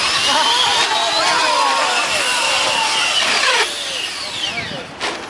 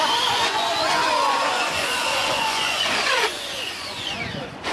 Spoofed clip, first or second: second